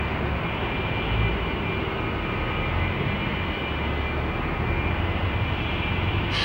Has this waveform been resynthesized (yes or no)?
no